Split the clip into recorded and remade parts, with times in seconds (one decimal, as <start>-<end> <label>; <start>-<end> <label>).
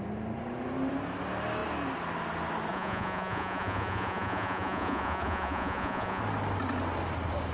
0.0-2.7 recorded; 2.7-6.2 remade; 6.2-7.5 recorded